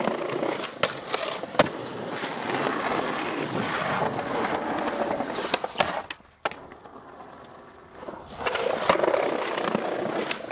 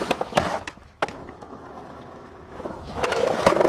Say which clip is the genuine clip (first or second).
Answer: first